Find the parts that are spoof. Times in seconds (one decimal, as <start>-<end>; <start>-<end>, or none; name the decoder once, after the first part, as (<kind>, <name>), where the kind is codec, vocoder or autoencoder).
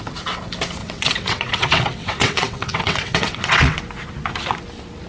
0.8-3.8 (vocoder, WaveNeXt)